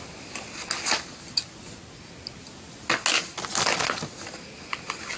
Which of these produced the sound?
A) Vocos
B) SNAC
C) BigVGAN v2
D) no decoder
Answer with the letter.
D